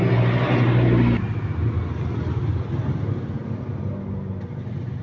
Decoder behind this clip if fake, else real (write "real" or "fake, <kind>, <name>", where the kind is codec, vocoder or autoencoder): real